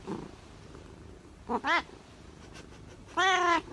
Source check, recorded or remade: recorded